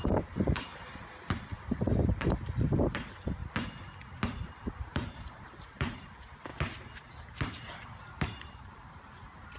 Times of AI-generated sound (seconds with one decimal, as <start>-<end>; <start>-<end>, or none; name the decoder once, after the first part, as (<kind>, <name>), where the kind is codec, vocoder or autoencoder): 0.0-0.7 (vocoder, BigVGAN v2); 1.5-3.4; 4.8-6.5; 8.4-9.6